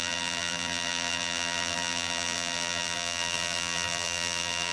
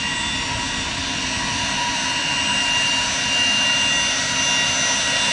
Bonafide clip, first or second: second